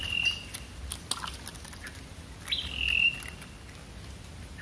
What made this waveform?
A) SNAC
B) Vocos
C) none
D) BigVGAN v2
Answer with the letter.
C